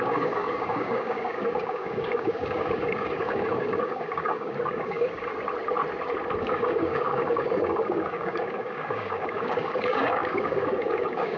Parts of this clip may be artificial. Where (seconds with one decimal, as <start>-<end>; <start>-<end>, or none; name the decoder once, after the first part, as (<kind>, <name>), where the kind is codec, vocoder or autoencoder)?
0.0-5.3 (codec, DAC); 6.4-11.4